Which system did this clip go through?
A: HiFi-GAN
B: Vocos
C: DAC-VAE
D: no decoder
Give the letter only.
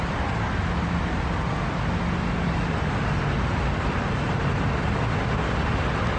D